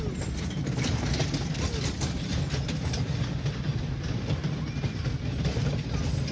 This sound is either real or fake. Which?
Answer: real